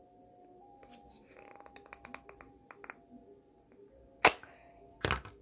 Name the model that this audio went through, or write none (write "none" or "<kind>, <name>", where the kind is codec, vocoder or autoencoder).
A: none